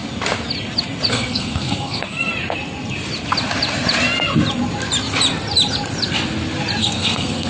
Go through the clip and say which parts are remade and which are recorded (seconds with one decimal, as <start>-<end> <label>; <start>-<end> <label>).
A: 0.0-1.1 recorded; 1.1-2.3 remade; 2.3-6.8 recorded; 6.8-7.5 remade